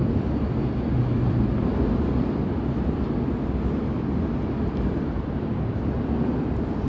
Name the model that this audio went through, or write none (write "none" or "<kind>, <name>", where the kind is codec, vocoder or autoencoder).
vocoder, BigVGAN v2